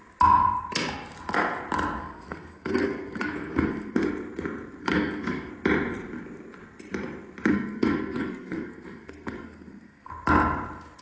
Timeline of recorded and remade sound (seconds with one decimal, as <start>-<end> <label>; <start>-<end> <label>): 0.0-2.0 recorded; 2.0-4.0 remade; 4.0-4.8 recorded; 4.8-5.5 remade; 5.5-7.5 recorded; 7.5-10.1 remade; 10.1-11.0 recorded